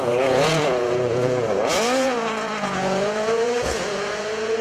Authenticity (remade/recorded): remade